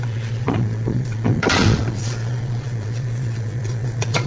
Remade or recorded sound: remade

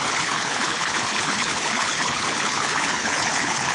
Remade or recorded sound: remade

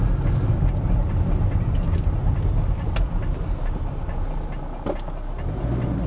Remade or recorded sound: recorded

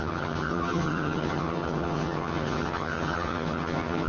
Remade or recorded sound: remade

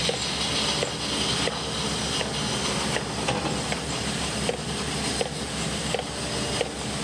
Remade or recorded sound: recorded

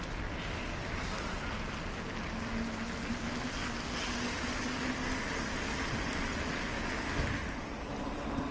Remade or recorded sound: recorded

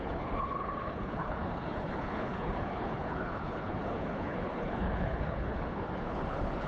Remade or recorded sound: remade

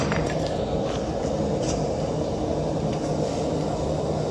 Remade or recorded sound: recorded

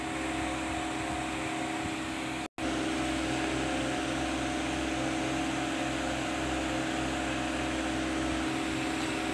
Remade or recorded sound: recorded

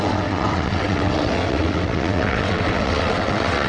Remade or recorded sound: remade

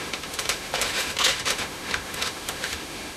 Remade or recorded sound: remade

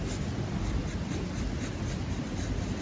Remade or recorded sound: recorded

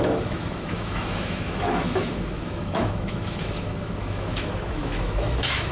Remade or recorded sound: remade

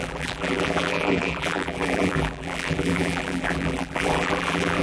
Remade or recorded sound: remade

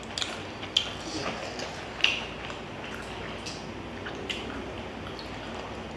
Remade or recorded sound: recorded